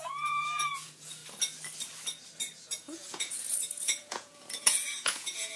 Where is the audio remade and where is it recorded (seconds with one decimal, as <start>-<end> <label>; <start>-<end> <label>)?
0.0-1.2 remade; 1.2-2.7 recorded; 2.7-5.6 remade